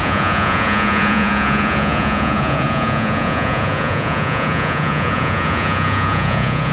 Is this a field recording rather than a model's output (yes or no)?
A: no